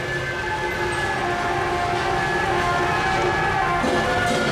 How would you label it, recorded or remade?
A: recorded